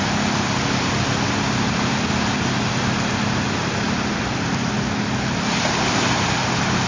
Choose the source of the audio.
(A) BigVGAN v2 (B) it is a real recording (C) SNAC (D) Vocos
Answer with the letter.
B